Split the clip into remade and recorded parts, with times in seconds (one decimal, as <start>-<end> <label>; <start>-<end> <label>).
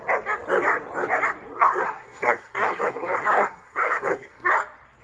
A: 0.0-1.5 recorded; 1.5-4.5 remade; 4.5-5.0 recorded